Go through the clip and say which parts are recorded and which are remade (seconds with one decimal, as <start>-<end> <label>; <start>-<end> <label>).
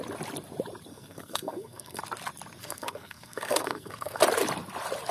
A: 0.0-0.9 recorded; 0.9-2.0 remade; 2.0-2.6 recorded; 2.6-4.2 remade; 4.2-5.1 recorded